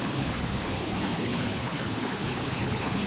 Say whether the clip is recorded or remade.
remade